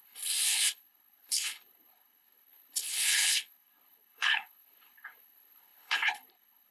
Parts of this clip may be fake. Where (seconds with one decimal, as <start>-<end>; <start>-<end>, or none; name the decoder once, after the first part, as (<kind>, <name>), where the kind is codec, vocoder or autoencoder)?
0.0-6.7 (codec, HILCodec)